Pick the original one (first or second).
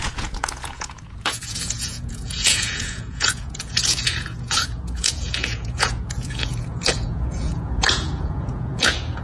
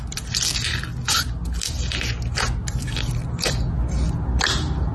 second